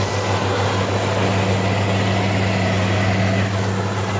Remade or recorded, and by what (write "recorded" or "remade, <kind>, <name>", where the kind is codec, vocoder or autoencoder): recorded